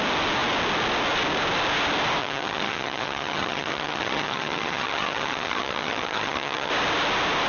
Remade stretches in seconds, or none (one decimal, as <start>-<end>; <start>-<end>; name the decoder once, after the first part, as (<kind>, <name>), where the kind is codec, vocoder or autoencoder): 2.2-6.7 (vocoder, HiFi-GAN)